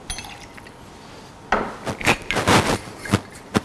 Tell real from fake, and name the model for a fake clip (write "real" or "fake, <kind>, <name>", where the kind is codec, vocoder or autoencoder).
real